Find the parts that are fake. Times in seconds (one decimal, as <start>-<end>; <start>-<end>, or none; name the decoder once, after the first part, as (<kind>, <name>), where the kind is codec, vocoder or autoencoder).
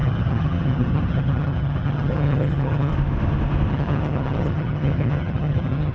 0.0-2.9 (vocoder, HiFi-GAN); 3.7-5.9